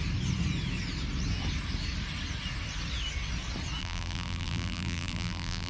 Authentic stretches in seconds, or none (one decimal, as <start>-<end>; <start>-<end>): 0.0-3.8

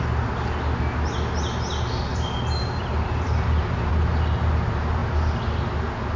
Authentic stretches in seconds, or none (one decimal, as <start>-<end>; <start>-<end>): 0.0-2.1; 3.9-6.2

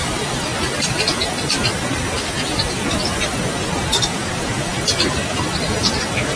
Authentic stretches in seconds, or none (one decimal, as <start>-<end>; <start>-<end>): 0.0-6.4

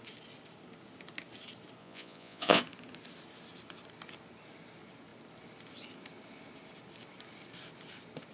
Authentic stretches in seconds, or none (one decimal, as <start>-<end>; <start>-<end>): 0.0-1.8; 2.6-8.3

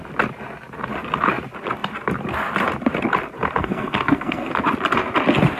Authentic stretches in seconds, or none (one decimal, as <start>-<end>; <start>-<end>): 0.0-3.6; 4.5-5.6

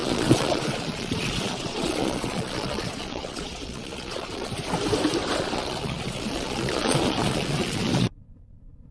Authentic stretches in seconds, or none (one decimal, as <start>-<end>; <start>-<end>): 4.5-5.4

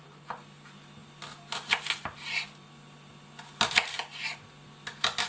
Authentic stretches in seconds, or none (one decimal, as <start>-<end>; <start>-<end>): 0.0-5.3

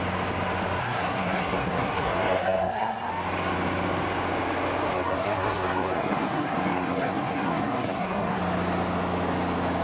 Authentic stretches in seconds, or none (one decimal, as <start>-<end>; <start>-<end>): 0.0-0.8; 3.1-4.9; 8.4-9.8